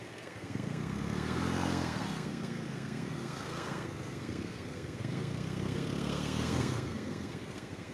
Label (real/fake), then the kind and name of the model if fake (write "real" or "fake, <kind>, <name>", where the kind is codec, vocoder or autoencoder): fake, codec, SNAC